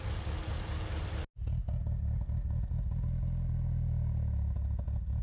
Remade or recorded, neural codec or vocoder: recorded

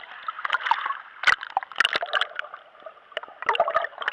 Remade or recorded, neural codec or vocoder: recorded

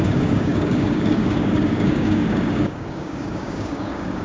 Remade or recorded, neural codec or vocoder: remade, codec, DAC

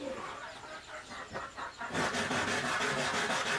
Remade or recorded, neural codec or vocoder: recorded